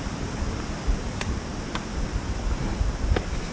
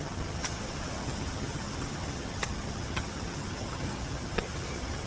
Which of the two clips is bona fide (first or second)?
first